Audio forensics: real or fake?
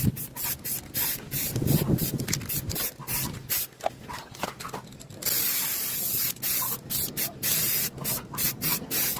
real